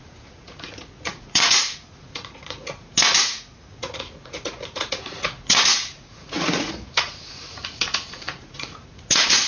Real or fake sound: fake